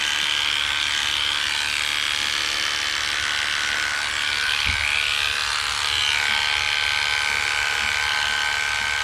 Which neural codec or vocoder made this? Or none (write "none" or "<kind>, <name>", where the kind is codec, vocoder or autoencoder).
none